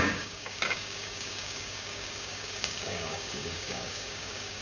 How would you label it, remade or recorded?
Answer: remade